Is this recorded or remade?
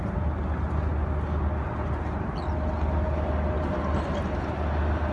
recorded